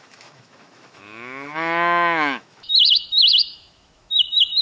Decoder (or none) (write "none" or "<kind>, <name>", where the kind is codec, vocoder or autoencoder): autoencoder, DAC-VAE